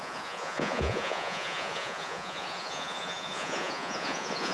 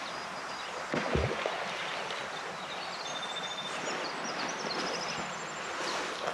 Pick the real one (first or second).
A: second